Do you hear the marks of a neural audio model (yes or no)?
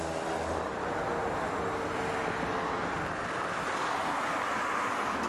no